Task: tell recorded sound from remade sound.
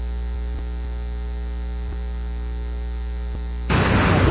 recorded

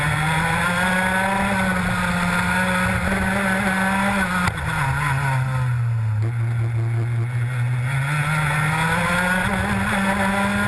recorded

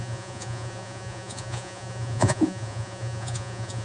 remade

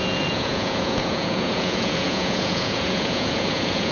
remade